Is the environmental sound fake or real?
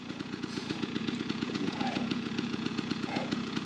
fake